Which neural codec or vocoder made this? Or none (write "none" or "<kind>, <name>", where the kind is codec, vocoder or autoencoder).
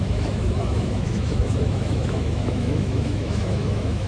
autoencoder, DAC-VAE